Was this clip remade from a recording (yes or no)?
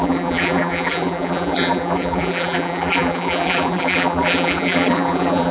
yes